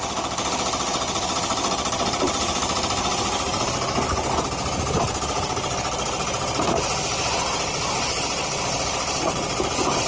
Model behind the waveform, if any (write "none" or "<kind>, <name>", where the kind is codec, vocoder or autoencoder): none